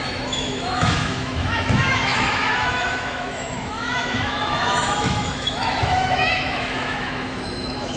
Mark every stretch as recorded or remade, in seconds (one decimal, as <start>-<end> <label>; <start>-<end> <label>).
0.0-8.0 remade